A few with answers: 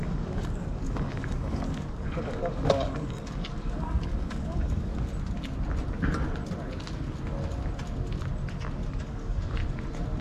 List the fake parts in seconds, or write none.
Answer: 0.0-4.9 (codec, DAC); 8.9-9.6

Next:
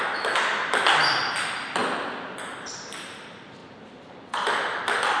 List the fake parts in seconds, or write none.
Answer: none